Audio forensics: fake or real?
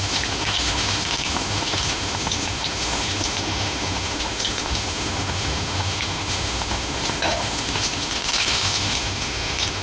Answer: fake